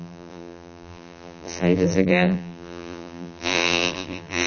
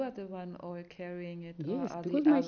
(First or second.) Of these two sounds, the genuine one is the second